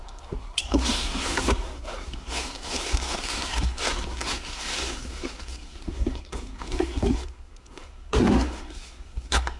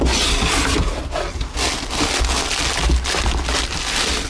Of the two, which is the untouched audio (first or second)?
second